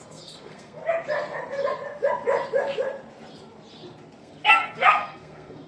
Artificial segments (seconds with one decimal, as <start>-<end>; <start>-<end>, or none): 0.0-0.8; 4.2-5.7